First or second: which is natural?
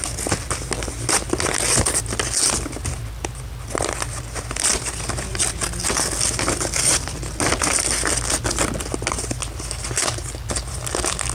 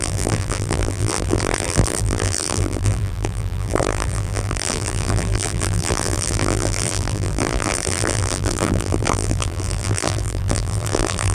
first